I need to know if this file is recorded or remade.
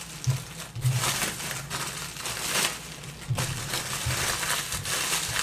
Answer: recorded